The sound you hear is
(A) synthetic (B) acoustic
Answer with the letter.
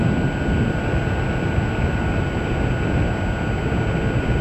B